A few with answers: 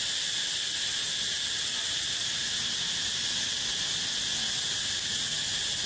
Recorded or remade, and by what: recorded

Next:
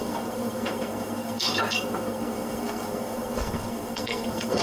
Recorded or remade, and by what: remade, codec, SNAC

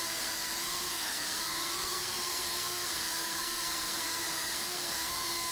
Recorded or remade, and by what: remade, codec, SNAC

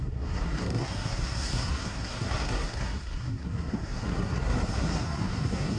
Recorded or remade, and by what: remade, codec, SNAC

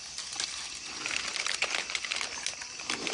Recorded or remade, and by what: recorded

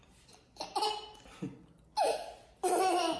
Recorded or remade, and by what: recorded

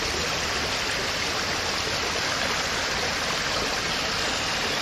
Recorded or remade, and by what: recorded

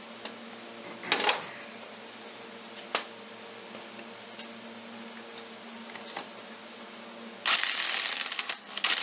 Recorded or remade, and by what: recorded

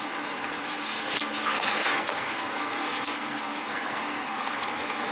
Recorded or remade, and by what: remade, codec, SNAC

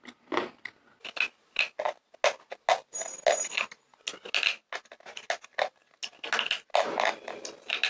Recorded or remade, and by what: recorded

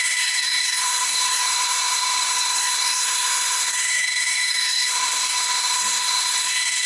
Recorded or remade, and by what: remade, codec, SNAC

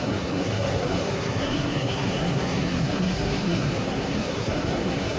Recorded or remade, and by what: remade, codec, SNAC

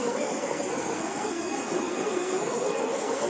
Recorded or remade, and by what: remade, codec, SNAC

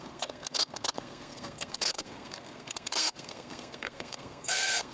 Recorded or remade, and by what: remade, codec, SNAC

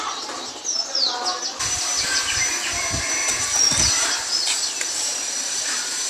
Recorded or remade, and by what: recorded